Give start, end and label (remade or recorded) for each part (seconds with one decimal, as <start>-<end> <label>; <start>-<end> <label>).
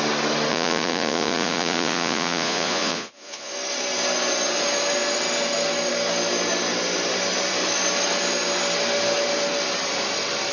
0.0-0.5 recorded; 0.5-3.5 remade; 3.5-10.5 recorded